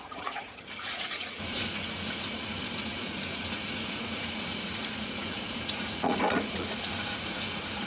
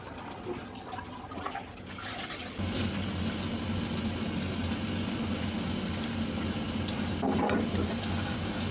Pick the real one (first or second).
second